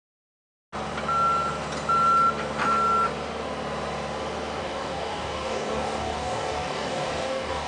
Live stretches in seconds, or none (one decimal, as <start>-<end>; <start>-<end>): 0.0-4.6